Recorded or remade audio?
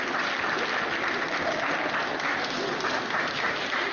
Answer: recorded